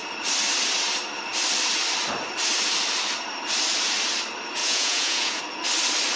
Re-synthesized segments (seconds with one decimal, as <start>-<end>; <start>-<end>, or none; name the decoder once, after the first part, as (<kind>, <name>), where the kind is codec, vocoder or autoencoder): 4.6-5.4 (vocoder, Vocos)